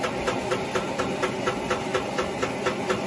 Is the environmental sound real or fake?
real